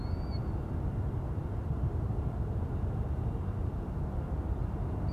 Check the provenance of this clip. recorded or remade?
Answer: recorded